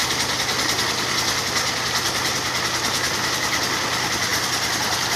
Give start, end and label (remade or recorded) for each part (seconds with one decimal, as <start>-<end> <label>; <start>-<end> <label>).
0.0-5.2 recorded